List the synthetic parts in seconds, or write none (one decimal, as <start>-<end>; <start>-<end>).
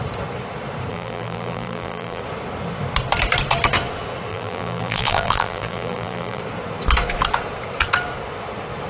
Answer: 0.9-2.2; 4.3-6.4